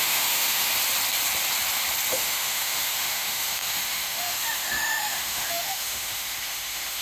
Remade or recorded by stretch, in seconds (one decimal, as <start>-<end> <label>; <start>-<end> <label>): 0.0-0.7 remade; 0.7-2.1 recorded; 2.1-7.0 remade